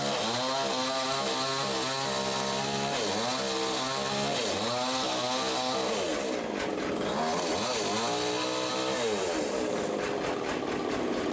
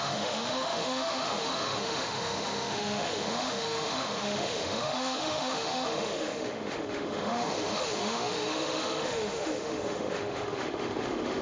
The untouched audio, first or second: first